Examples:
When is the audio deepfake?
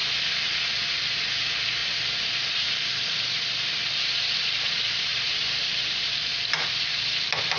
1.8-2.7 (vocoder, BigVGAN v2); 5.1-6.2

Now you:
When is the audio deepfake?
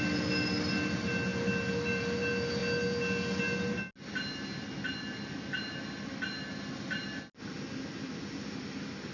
none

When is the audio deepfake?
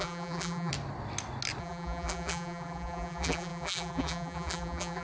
0.0-0.7 (vocoder, BigVGAN v2); 1.6-5.0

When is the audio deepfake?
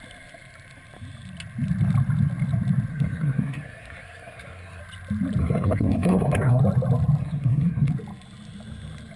2.9-4.8 (codec, SNAC); 5.4-6.6; 7.2-7.9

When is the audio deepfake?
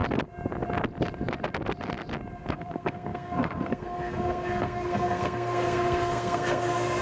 2.5-7.0 (codec, SNAC)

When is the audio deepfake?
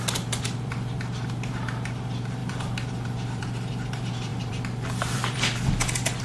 2.4-3.4 (vocoder, BigVGAN v2); 4.3-6.2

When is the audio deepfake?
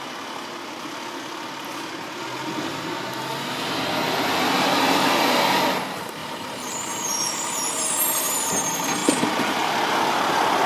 6.2-8.5 (vocoder, BigVGAN v2); 9.0-9.7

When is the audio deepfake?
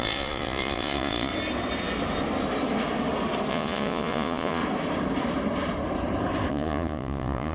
0.0-1.3 (vocoder, Vocos); 3.5-4.6; 6.5-7.5